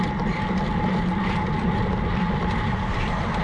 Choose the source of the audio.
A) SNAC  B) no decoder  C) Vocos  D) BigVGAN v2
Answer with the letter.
B